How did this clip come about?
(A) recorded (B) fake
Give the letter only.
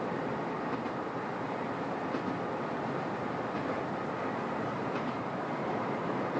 B